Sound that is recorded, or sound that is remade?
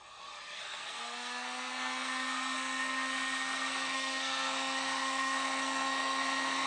remade